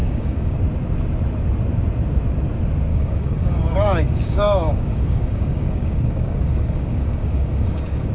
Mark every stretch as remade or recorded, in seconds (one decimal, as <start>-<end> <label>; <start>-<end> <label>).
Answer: 0.0-0.6 remade; 0.6-2.9 recorded; 2.9-8.1 remade